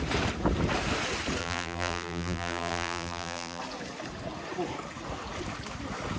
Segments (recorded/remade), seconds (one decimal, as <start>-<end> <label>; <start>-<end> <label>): 0.0-1.4 recorded; 1.4-3.6 remade; 3.6-6.2 recorded

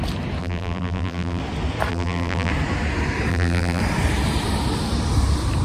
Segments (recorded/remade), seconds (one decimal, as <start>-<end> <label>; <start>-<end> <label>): 0.0-0.4 recorded; 0.4-1.4 remade; 1.4-1.9 recorded; 1.9-2.5 remade; 2.5-3.3 recorded; 3.3-3.8 remade; 3.8-5.6 recorded

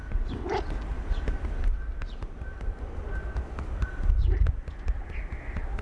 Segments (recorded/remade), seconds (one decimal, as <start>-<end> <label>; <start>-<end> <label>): 0.0-1.7 recorded; 1.7-2.8 remade; 2.8-5.8 recorded

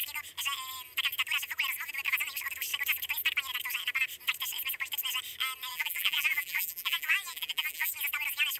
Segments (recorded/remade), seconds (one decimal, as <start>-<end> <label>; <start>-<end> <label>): 0.0-5.7 recorded; 5.7-7.9 remade; 7.9-8.6 recorded